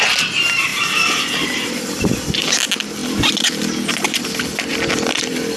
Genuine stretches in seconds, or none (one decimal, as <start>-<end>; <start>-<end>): 0.0-0.7; 1.6-3.0; 3.6-4.7